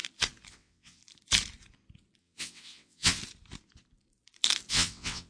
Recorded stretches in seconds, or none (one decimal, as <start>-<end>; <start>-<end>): 0.0-0.5; 1.0-2.2; 3.2-4.7